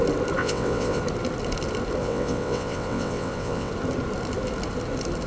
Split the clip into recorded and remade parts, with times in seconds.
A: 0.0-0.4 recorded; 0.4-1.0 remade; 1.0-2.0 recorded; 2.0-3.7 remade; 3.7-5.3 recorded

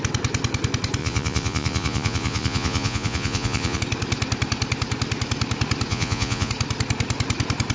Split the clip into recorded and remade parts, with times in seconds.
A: 0.0-1.0 recorded; 1.0-3.8 remade; 3.8-5.9 recorded; 5.9-6.5 remade; 6.5-7.7 recorded

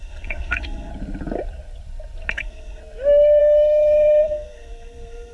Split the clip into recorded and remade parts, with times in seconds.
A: 0.0-0.9 remade; 0.9-2.3 recorded; 2.3-2.8 remade; 2.8-3.4 recorded; 3.4-5.3 remade